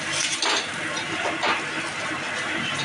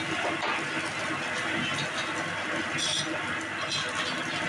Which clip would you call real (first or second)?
second